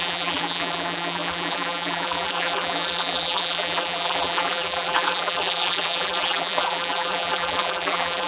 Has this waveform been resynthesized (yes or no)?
yes